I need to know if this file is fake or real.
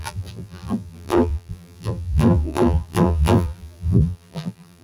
fake